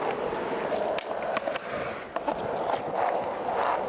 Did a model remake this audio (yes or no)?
no